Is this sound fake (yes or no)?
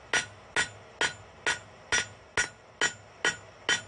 no